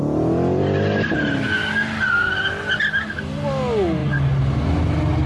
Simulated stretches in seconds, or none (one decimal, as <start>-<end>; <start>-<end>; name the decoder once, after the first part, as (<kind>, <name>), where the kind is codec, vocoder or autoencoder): none